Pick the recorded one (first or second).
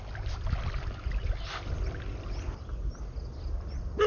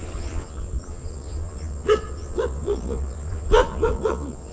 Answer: first